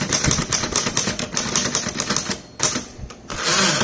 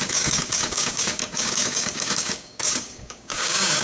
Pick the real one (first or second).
first